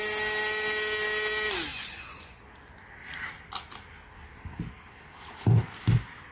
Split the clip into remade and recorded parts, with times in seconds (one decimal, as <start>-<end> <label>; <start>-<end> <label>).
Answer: 0.0-1.7 recorded; 1.7-2.4 remade; 2.4-6.3 recorded